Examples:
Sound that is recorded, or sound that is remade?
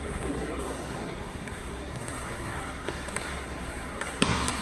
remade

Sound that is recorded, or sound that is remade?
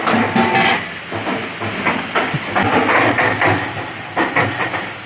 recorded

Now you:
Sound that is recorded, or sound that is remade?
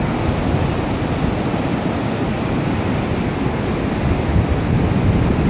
recorded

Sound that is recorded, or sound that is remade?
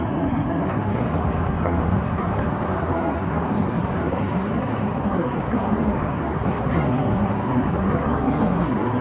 remade